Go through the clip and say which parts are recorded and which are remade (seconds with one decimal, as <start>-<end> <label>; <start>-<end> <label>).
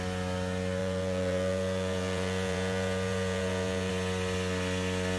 0.0-0.8 recorded; 0.8-3.9 remade; 3.9-5.2 recorded